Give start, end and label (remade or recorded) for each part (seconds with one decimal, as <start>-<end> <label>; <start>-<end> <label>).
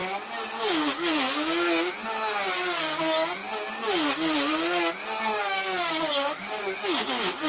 0.0-5.3 recorded; 5.3-7.1 remade; 7.1-7.5 recorded